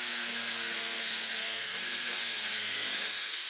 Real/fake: fake